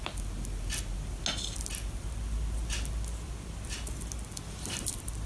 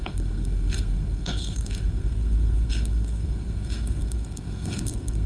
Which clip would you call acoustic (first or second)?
first